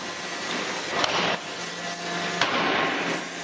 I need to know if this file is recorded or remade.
recorded